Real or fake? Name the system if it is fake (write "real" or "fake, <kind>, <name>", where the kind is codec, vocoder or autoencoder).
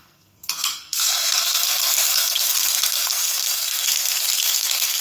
fake, codec, SNAC